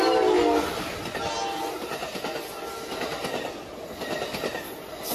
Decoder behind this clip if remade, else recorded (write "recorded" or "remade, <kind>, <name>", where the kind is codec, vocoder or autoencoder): recorded